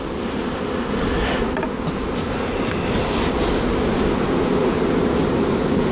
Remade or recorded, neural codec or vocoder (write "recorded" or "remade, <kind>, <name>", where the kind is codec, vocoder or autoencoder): recorded